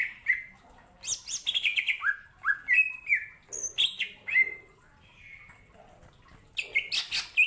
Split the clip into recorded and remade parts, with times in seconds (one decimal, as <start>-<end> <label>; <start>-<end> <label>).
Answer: 0.0-7.5 recorded